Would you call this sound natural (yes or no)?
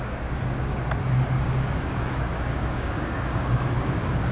no